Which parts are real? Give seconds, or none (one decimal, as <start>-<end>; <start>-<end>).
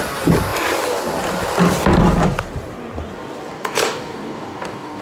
0.0-3.5